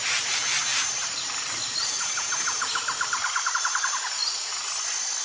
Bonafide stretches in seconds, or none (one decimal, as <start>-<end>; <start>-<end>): 4.2-5.2

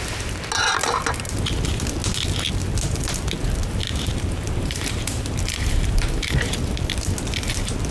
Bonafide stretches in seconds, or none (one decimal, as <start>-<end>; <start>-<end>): 0.0-3.6; 6.6-7.9